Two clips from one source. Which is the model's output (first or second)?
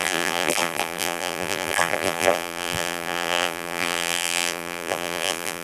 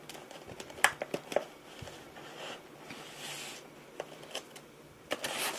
first